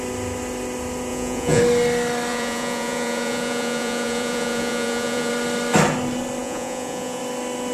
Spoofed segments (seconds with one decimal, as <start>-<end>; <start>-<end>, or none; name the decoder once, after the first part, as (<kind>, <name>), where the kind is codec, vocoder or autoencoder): 1.1-1.6 (vocoder, Vocos); 2.3-5.3; 6.4-7.2